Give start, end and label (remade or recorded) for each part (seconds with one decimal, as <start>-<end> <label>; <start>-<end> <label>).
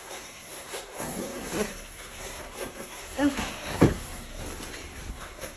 0.0-4.4 remade; 4.4-5.1 recorded; 5.1-5.6 remade